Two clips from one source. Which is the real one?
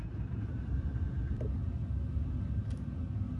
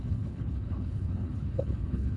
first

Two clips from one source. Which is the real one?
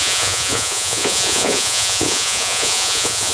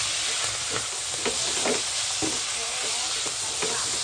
second